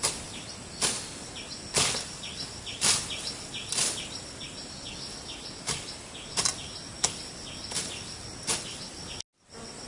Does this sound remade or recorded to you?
recorded